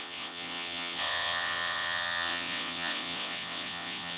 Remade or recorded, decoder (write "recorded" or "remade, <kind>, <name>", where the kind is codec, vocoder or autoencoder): remade, vocoder, WaveNeXt